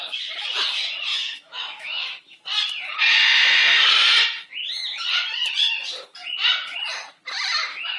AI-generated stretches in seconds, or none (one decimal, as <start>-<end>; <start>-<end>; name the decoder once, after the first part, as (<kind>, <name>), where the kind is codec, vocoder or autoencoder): 1.1-2.4 (autoencoder, DAC-VAE)